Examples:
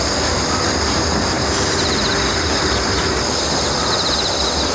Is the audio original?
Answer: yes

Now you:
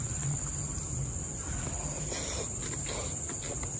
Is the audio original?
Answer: yes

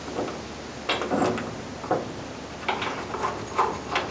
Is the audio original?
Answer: yes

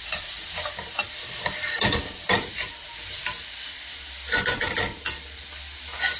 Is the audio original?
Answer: yes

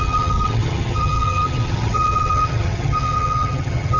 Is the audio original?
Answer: no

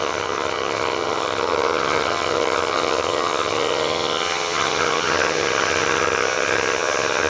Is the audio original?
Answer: no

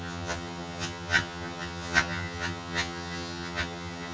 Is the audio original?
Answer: no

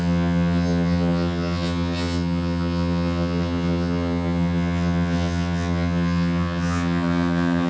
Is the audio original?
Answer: no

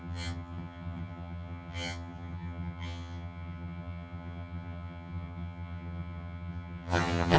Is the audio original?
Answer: no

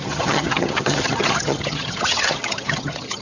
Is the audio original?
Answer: no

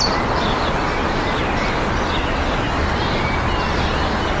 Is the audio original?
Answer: yes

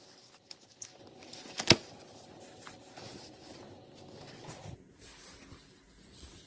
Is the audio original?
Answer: yes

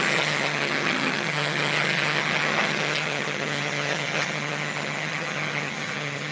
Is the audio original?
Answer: no